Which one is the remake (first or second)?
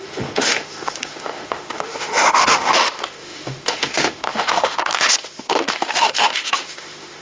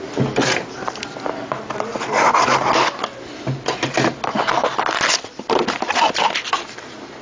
first